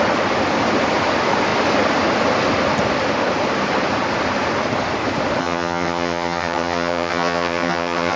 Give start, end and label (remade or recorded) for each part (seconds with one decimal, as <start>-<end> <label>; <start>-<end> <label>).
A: 0.0-5.4 recorded; 5.4-8.2 remade